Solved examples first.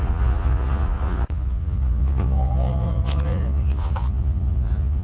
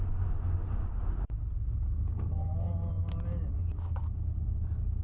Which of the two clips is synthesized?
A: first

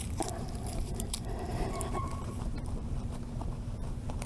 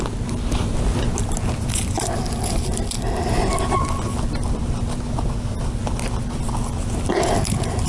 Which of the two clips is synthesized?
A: first